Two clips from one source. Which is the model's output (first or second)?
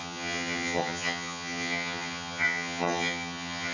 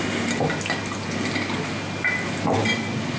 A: first